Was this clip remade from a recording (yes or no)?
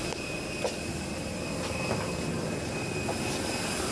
no